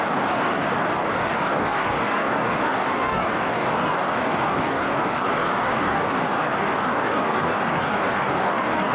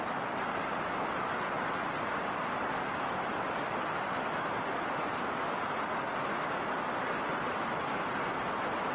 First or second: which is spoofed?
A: first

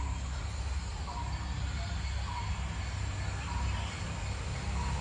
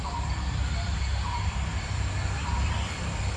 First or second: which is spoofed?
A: second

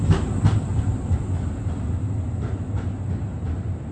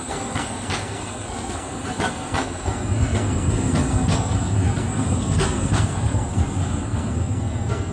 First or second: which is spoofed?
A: second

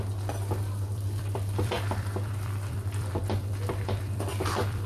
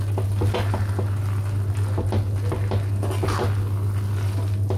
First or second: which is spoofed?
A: first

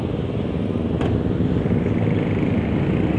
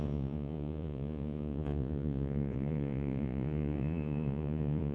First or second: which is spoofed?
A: second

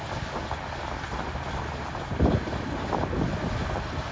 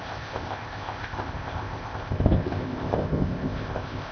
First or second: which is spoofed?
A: second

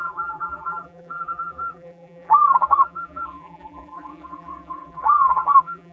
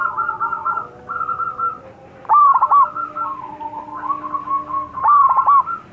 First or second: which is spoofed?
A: first